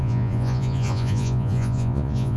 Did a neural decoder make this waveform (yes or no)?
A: yes